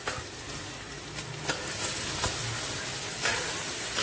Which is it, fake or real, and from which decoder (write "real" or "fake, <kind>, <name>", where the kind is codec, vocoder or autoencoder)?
real